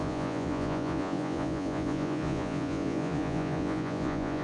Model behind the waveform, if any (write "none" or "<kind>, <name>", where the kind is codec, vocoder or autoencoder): vocoder, Vocos